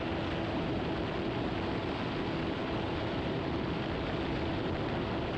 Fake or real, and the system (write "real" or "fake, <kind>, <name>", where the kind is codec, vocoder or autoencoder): real